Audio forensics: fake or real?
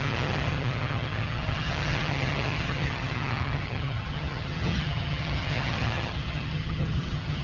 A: fake